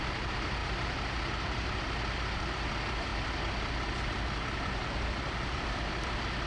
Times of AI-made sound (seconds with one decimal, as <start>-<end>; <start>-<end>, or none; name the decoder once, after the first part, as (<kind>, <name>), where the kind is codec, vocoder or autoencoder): 4.8-5.9 (vocoder, BigVGAN v2)